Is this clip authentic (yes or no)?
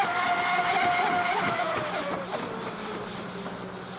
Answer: yes